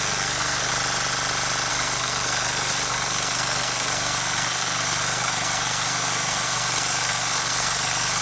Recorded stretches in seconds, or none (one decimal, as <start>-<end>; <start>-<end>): 0.7-1.7